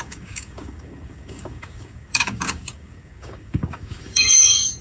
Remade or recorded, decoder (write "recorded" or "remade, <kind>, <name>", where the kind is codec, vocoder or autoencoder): remade, codec, DAC